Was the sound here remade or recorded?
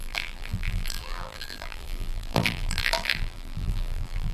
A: remade